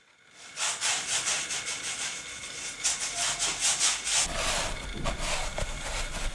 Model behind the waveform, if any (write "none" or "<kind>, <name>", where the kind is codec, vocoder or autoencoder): none